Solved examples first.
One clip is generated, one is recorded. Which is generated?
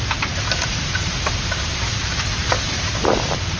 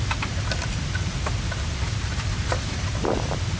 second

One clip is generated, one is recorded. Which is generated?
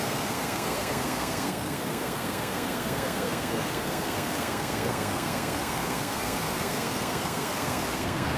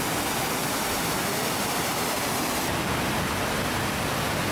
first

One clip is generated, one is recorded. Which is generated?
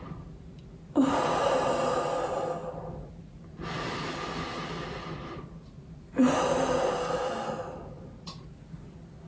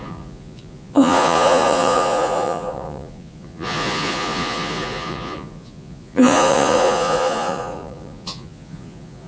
second